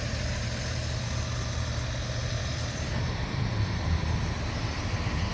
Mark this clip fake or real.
real